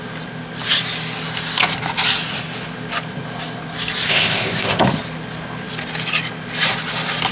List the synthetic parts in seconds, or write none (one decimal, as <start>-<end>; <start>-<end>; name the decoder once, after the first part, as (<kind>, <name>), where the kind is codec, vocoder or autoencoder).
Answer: 4.1-4.8 (codec, ZipCodec)